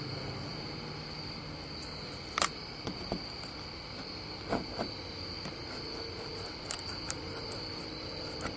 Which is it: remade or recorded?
recorded